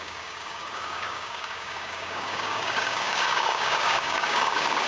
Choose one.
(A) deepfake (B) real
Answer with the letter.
A